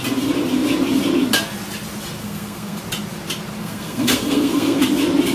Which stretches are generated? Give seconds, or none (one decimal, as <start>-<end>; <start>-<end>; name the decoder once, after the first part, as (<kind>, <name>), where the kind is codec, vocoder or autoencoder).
2.2-2.8 (codec, SNAC); 3.6-4.8